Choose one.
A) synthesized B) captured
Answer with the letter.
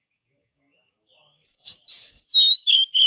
A